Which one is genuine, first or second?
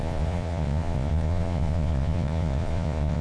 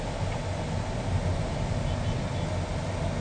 second